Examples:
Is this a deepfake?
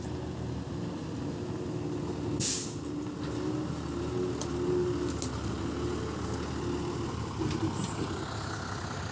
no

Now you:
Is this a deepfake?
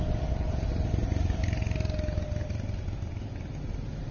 no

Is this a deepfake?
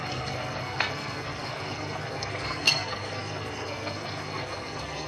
yes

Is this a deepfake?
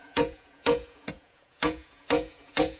yes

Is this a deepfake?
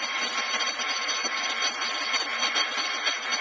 no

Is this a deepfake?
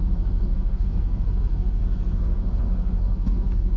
yes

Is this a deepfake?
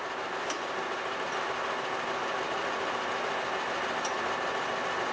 no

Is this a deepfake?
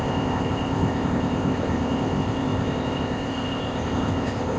yes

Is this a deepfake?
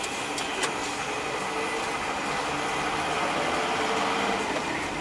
no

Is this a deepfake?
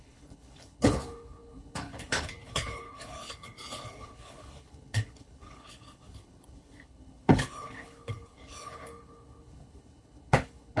yes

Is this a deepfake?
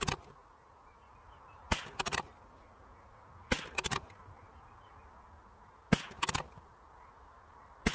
no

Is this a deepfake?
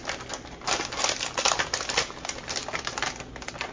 no